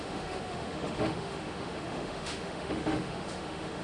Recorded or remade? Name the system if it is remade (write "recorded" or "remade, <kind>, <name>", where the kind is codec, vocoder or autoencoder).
remade, autoencoder, DAC-VAE